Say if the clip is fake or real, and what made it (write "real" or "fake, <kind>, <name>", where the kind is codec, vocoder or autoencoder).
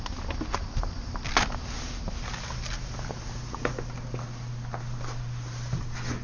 real